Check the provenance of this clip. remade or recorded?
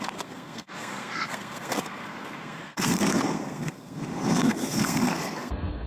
remade